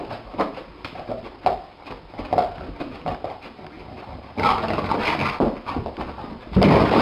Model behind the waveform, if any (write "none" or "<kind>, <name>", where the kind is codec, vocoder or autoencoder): none